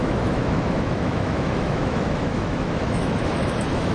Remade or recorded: remade